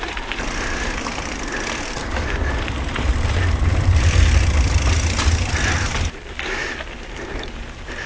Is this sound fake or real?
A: real